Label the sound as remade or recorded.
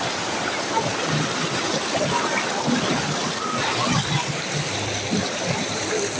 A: recorded